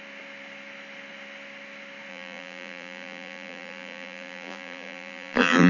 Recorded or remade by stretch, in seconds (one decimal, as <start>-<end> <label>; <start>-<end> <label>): 0.0-2.1 recorded; 2.1-5.7 remade

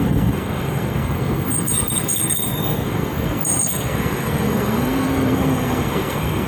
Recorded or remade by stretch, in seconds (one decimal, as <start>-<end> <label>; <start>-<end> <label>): 0.0-6.5 remade

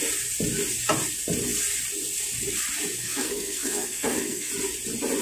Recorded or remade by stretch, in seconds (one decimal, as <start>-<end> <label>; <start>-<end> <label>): 0.0-3.0 recorded; 3.0-4.5 remade; 4.5-5.2 recorded

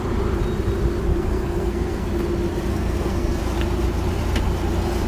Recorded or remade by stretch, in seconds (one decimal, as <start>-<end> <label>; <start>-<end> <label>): 0.0-1.1 recorded; 1.1-2.1 remade; 2.1-2.7 recorded; 2.7-3.4 remade; 3.4-5.1 recorded

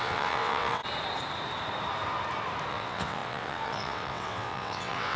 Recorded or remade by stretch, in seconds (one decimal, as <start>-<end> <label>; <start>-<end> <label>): 0.0-0.8 remade; 0.8-2.7 recorded; 2.7-5.2 remade